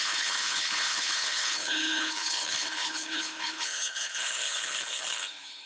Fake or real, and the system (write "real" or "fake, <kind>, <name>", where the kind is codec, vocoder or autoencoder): fake, codec, HILCodec